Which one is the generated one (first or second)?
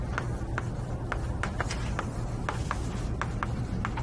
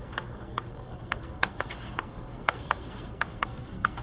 second